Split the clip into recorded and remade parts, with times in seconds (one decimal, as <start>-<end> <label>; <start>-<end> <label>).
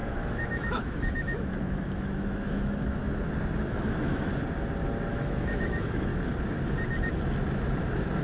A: 0.0-3.0 remade; 3.0-3.7 recorded; 3.7-4.3 remade; 4.3-5.1 recorded; 5.1-6.1 remade; 6.1-8.2 recorded